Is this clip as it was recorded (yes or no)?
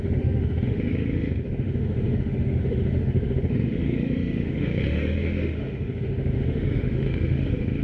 no